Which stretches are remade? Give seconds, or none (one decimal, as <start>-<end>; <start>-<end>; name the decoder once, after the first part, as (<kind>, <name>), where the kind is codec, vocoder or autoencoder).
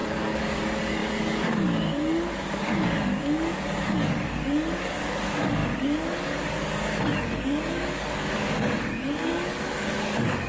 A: 0.0-10.5 (codec, DAC)